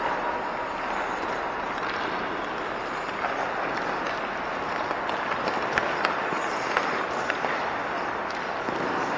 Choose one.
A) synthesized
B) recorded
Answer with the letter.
B